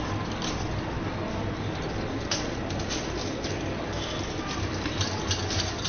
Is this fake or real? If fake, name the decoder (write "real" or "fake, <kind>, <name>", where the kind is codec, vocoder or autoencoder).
real